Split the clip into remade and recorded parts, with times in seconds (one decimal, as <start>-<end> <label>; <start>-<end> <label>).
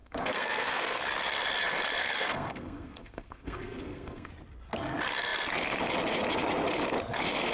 0.0-1.0 remade; 1.0-2.0 recorded; 2.0-4.3 remade; 4.3-7.5 recorded